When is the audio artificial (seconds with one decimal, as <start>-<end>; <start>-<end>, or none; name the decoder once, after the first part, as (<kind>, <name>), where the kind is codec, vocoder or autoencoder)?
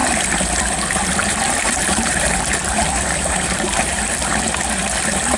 1.2-4.4 (vocoder, BigVGAN v2)